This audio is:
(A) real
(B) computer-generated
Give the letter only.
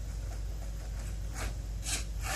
A